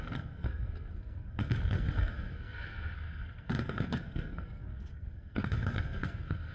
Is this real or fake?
fake